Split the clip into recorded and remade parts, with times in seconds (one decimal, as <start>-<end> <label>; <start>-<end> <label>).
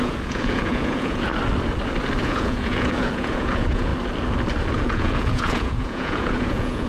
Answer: 0.0-1.3 remade; 1.3-2.2 recorded; 2.2-3.9 remade; 3.9-4.7 recorded; 4.7-6.9 remade